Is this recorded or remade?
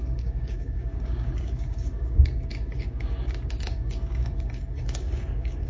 remade